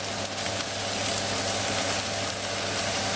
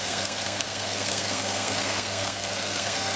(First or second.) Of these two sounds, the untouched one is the first